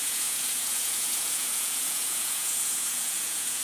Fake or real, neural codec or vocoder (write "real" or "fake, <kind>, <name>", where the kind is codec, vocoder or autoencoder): fake, vocoder, Vocos